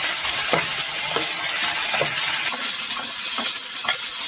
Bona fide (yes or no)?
yes